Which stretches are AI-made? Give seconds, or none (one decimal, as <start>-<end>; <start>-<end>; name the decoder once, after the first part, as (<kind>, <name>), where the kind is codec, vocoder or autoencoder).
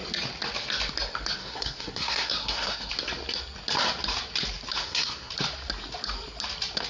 1.4-2.9 (codec, SNAC); 4.8-5.3